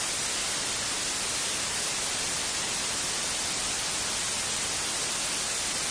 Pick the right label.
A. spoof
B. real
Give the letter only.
B